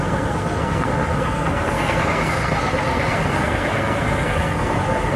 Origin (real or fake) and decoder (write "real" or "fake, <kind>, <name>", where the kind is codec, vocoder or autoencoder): fake, codec, SNAC